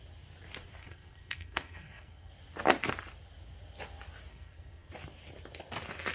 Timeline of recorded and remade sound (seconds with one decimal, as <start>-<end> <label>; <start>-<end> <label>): 0.0-0.8 recorded; 0.8-2.3 remade; 2.3-4.3 recorded; 4.3-4.9 remade; 4.9-6.1 recorded